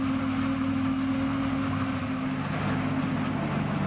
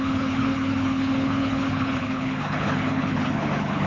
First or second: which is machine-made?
second